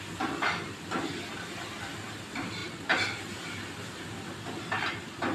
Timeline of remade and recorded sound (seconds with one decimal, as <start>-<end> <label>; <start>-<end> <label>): 0.0-5.3 recorded